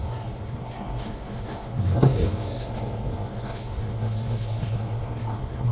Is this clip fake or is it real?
fake